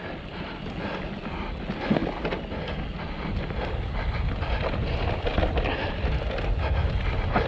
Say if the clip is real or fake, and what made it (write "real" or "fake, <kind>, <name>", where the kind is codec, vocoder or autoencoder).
real